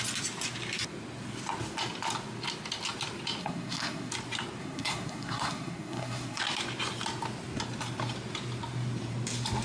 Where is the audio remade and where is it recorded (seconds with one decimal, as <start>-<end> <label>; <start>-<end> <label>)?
0.0-3.4 recorded; 3.4-4.1 remade; 4.1-4.6 recorded; 4.6-6.4 remade; 6.4-9.6 recorded